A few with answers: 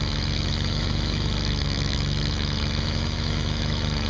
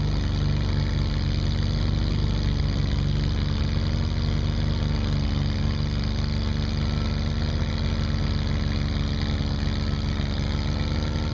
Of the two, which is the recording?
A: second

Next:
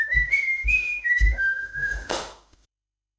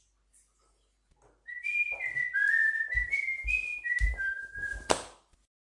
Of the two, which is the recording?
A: second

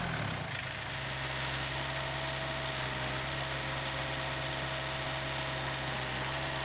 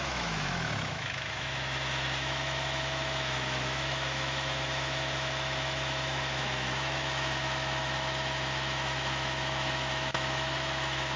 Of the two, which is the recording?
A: first